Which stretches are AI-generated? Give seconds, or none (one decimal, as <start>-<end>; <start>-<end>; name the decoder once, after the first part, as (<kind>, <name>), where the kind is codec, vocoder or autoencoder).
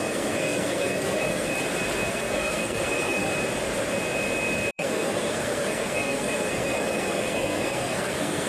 0.0-1.5 (codec, SNAC); 2.1-3.3; 4.7-8.5